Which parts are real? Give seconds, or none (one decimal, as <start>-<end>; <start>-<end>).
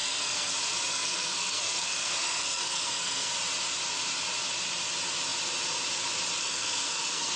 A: 0.5-0.9; 3.3-6.4